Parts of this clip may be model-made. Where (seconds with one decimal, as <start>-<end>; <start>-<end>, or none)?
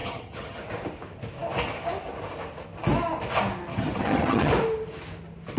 0.0-0.6; 3.7-4.5